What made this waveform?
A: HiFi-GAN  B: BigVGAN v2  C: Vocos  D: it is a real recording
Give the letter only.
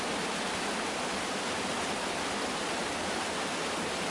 D